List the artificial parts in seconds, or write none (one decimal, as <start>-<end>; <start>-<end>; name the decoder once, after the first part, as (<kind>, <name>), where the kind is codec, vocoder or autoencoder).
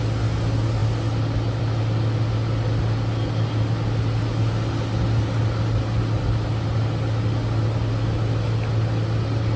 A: none